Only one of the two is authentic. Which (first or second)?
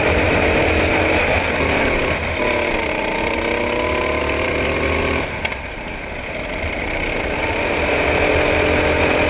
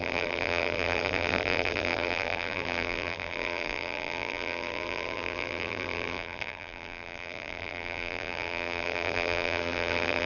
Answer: first